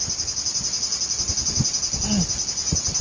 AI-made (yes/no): no